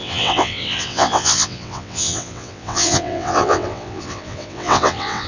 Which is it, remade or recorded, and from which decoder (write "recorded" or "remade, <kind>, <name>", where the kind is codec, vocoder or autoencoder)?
remade, vocoder, WaveNeXt